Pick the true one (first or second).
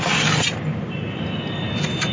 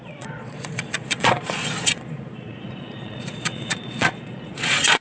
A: first